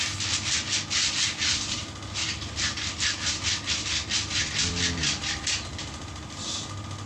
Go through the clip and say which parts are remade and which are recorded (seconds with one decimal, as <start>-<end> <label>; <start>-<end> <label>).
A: 0.0-2.2 recorded; 2.2-6.5 remade; 6.5-7.1 recorded